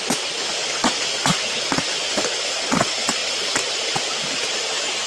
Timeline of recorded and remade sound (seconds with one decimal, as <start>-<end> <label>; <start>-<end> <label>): 0.0-5.1 recorded